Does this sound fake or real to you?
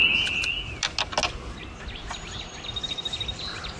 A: real